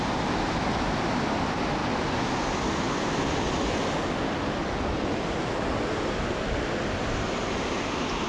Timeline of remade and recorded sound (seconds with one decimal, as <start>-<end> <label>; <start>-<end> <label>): 0.0-8.3 recorded